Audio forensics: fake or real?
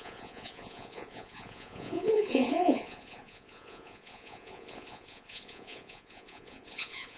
fake